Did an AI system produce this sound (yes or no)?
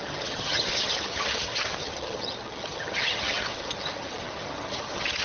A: yes